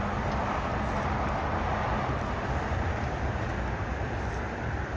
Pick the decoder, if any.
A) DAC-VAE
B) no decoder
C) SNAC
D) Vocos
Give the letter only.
B